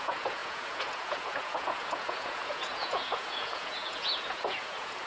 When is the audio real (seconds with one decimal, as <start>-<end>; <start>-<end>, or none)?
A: none